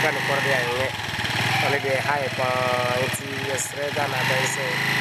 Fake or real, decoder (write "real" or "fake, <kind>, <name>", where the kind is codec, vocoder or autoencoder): real